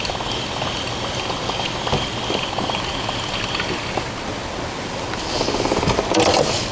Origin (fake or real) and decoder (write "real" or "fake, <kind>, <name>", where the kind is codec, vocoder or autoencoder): real